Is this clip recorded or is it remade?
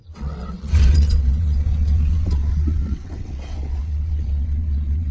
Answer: remade